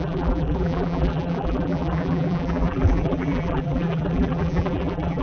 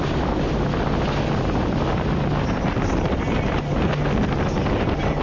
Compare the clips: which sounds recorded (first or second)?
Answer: second